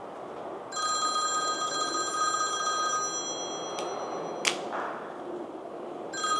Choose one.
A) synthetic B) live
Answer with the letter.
B